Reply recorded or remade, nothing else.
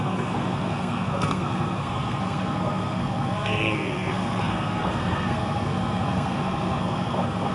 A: remade